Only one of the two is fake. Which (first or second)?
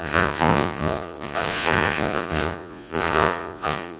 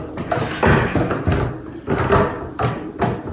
first